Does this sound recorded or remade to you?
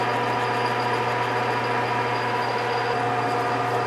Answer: recorded